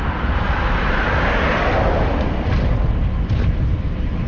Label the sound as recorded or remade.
recorded